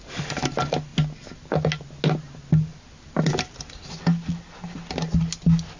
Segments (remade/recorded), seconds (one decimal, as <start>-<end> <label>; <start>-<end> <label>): 0.0-5.8 recorded